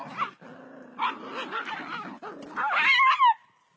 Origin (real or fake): real